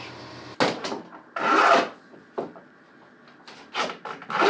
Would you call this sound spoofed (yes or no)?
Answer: no